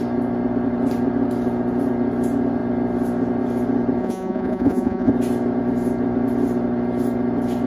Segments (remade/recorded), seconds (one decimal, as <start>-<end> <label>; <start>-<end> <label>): 0.0-4.0 recorded; 4.0-5.1 remade; 5.1-7.7 recorded